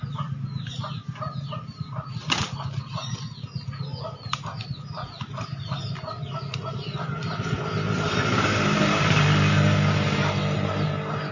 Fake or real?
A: real